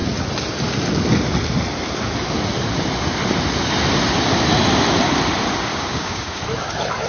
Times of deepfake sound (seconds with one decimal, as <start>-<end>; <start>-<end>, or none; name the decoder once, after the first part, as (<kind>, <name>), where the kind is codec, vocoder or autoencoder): 5.7-6.4 (codec, DAC)